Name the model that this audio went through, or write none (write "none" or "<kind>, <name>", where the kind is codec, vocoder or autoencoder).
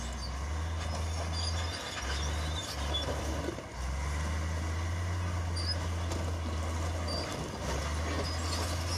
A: none